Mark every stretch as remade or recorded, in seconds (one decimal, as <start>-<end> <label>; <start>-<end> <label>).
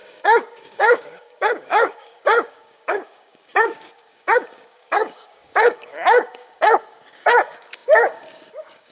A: 0.0-8.9 remade